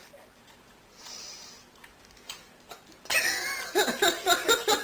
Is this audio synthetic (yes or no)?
no